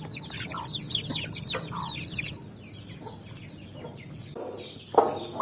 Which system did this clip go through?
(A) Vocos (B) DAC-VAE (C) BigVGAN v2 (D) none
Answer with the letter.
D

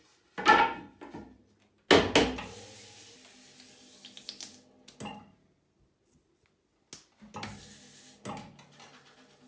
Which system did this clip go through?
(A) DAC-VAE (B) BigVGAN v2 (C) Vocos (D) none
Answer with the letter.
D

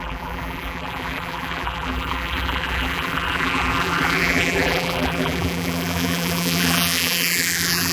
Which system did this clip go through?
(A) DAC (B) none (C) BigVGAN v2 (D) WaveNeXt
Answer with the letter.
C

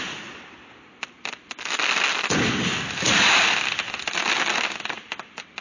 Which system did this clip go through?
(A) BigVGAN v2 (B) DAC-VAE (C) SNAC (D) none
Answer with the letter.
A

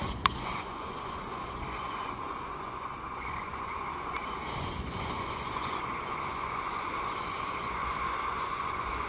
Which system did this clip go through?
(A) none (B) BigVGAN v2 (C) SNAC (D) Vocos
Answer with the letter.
D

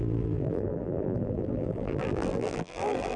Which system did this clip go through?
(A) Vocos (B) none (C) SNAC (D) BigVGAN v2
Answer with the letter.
D